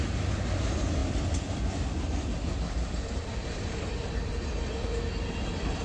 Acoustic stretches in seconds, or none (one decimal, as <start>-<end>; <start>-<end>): 0.0-1.0; 4.1-5.8